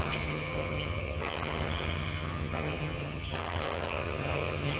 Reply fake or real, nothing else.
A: fake